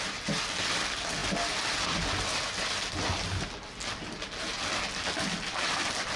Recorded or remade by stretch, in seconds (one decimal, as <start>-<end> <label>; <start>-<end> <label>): 0.0-6.2 recorded